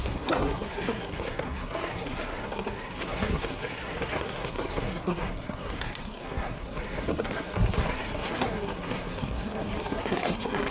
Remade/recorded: remade